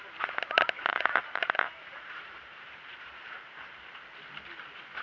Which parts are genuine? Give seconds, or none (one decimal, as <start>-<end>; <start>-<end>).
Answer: 0.0-0.9; 3.9-5.0